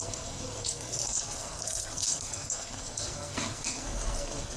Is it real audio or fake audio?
fake